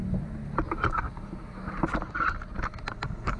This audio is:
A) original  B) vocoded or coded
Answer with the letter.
A